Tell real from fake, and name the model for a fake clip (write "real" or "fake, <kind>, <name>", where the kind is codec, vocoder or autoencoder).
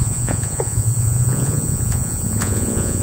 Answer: fake, vocoder, Vocos